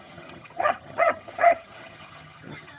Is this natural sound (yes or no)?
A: no